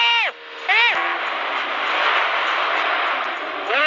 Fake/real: real